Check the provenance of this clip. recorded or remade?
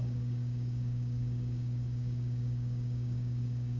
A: remade